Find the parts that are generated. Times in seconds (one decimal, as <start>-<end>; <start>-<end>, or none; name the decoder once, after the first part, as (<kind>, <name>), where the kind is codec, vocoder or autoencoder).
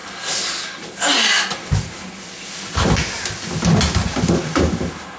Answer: none